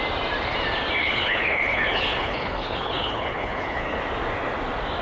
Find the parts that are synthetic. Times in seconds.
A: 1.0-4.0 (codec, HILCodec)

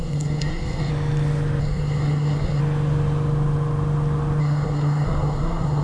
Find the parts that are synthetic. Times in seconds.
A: 0.0-0.9 (codec, SNAC); 1.6-2.6; 4.4-5.8

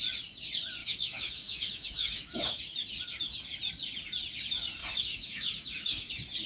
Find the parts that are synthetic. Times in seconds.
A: 0.8-2.6 (autoencoder, DAC-VAE); 4.8-6.1

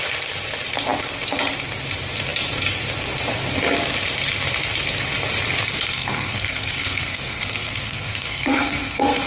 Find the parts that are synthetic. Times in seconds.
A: 5.9-9.3 (codec, SNAC)

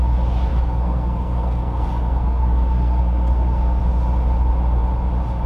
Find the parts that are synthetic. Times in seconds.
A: 0.5-3.8 (codec, SNAC)

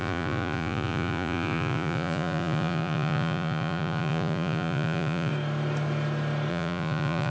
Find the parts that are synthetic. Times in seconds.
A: 0.0-5.3 (vocoder, Vocos); 6.5-7.3

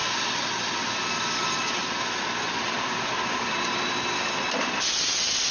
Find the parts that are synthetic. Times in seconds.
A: none

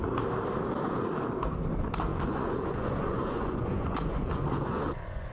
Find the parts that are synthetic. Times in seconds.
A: 2.1-5.3 (vocoder, Vocos)